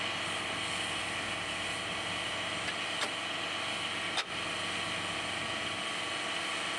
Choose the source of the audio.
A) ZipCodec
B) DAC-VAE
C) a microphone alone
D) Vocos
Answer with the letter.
C